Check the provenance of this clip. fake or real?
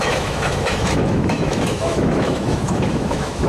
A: fake